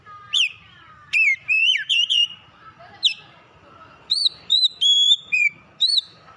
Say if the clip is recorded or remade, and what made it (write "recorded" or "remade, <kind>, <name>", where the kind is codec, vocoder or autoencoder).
remade, vocoder, BigVGAN v2